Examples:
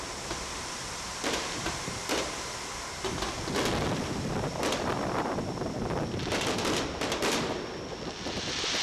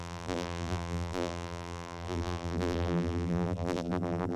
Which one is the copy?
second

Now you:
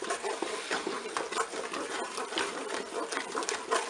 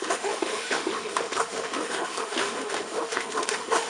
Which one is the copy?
second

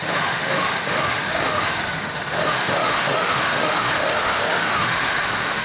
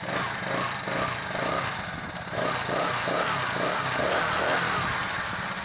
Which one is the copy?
first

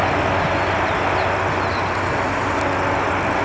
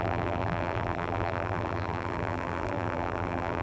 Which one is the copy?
second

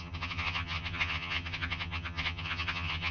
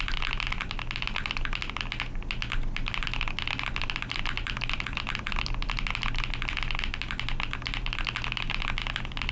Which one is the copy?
first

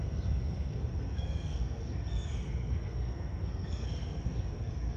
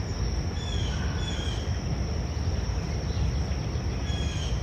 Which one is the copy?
first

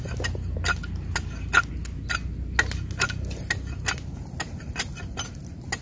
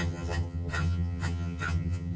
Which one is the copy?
second